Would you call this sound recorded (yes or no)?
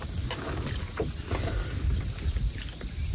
yes